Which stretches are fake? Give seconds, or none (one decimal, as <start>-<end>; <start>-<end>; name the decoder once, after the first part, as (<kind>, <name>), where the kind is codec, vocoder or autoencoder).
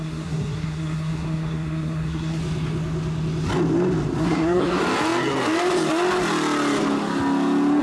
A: 0.0-2.4 (codec, SNAC); 4.2-4.8